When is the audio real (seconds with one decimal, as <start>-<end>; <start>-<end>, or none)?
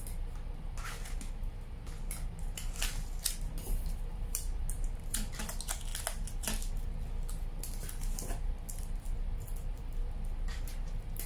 0.0-4.1; 5.4-11.3